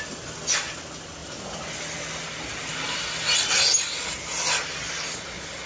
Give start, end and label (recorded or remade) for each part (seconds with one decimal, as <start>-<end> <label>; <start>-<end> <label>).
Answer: 0.0-5.7 recorded